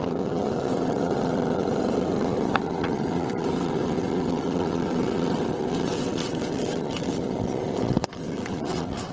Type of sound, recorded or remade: remade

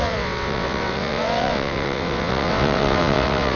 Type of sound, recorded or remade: remade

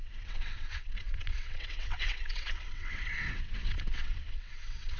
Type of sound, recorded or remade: remade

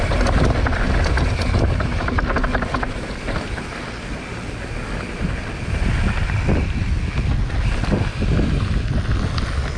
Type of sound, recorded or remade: recorded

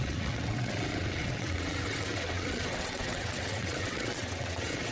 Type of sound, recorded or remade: remade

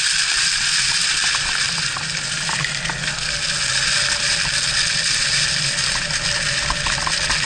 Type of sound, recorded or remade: recorded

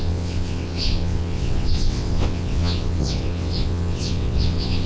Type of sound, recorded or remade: remade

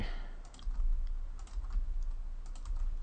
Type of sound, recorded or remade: recorded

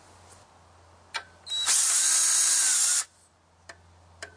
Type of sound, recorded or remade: recorded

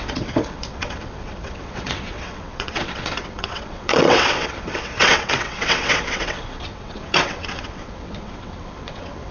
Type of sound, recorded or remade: remade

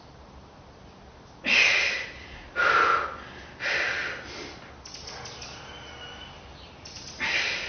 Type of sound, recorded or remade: recorded